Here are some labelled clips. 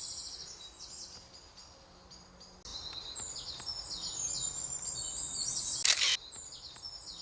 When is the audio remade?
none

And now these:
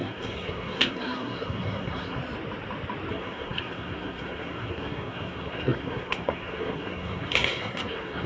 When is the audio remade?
0.0-2.2 (codec, SNAC); 3.1-8.3

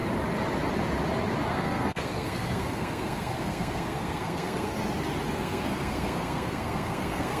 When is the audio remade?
1.5-4.7 (codec, SNAC); 5.3-7.4